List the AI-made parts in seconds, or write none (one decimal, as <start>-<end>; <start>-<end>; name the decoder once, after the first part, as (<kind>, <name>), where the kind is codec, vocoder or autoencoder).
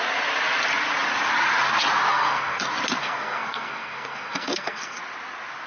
2.1-2.6 (codec, SNAC); 3.0-5.0